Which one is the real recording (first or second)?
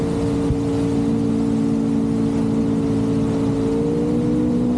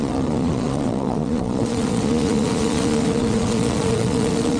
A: first